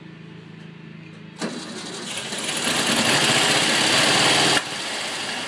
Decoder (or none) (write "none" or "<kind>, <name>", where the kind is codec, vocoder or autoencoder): none